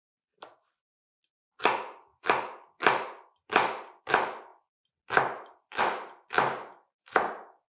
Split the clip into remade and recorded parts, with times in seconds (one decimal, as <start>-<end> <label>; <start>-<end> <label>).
0.0-2.1 recorded; 2.1-4.0 remade; 4.0-7.7 recorded